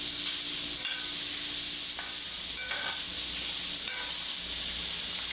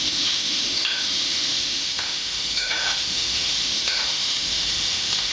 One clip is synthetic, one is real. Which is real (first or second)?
first